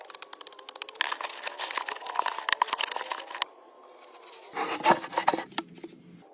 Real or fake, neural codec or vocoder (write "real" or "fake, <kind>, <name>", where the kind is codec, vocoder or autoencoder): real